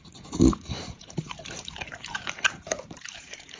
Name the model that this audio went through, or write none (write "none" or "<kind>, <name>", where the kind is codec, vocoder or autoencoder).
vocoder, BigVGAN v2